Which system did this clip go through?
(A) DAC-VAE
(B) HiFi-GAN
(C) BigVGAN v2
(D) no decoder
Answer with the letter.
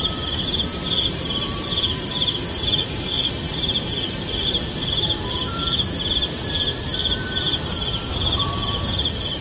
C